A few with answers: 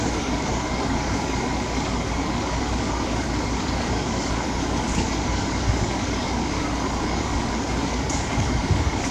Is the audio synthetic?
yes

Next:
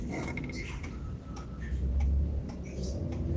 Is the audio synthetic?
no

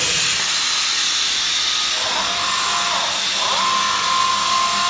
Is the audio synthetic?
no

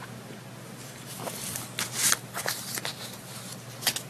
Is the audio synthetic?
no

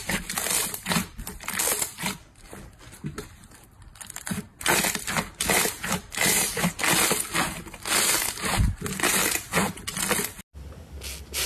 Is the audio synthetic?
no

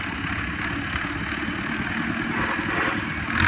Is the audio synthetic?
no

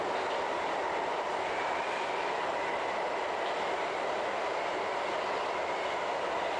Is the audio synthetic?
no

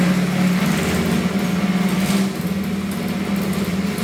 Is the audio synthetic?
no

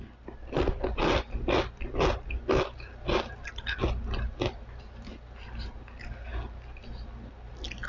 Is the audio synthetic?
no